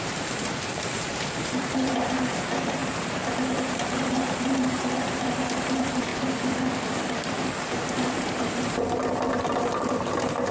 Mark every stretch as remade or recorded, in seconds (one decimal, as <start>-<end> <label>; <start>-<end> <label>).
0.0-6.1 remade; 6.1-7.6 recorded; 7.6-10.5 remade